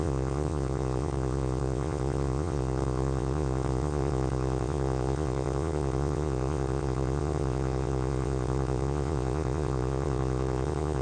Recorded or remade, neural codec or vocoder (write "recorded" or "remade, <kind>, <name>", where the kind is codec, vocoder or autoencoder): remade, vocoder, Vocos